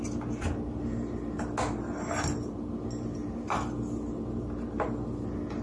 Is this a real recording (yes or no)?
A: yes